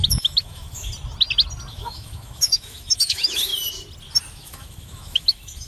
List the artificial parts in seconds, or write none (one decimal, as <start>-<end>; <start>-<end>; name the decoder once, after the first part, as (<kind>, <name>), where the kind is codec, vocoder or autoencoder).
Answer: 0.0-0.9 (autoencoder, DAC-VAE); 1.7-3.5; 4.3-5.7